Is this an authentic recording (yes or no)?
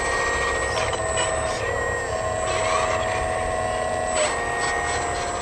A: yes